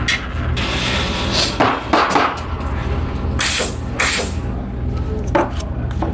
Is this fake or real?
real